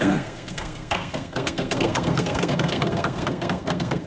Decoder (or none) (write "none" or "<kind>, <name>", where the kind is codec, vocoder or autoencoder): codec, SNAC